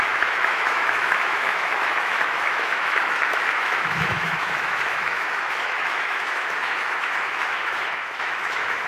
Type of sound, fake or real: fake